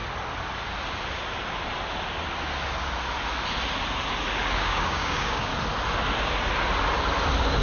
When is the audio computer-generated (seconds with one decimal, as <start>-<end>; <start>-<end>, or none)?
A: 4.6-5.5